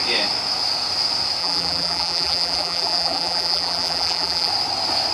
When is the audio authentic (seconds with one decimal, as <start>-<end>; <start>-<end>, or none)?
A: 0.0-1.4; 4.5-5.1